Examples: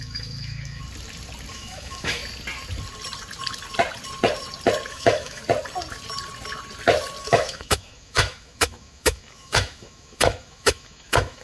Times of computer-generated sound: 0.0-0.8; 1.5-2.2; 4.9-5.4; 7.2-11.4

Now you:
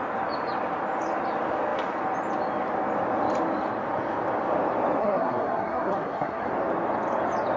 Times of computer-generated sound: 5.0-6.5

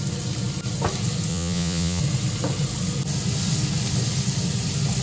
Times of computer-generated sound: 1.3-2.0